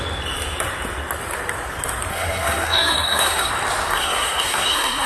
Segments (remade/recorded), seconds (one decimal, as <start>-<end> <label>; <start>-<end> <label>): 0.0-2.1 recorded; 2.1-3.5 remade; 3.5-3.9 recorded; 3.9-5.1 remade